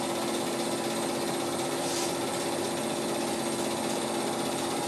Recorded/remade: recorded